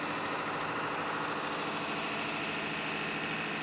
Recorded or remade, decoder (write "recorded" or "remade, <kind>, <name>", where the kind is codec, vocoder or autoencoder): recorded